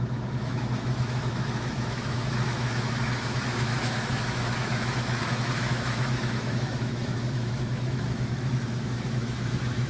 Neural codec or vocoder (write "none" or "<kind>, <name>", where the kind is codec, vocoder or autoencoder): autoencoder, DAC-VAE